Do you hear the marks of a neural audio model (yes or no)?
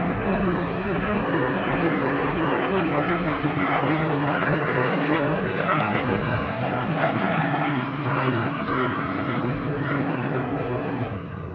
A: yes